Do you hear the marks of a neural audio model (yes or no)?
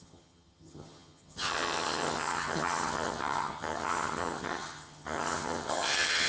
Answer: yes